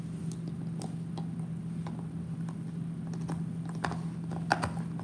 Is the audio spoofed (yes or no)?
no